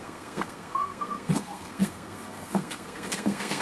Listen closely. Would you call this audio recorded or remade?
remade